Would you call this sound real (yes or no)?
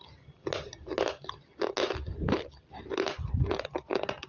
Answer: yes